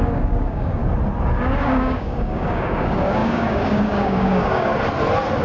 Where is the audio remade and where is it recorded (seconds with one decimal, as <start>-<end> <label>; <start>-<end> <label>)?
0.0-0.8 remade; 0.8-1.6 recorded; 1.6-4.7 remade; 4.7-5.4 recorded